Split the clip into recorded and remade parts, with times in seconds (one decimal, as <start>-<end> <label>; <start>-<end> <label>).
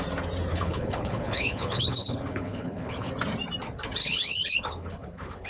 0.0-0.5 recorded; 0.5-3.1 remade; 3.1-4.0 recorded; 4.0-5.5 remade